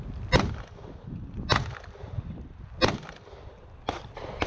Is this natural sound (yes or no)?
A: yes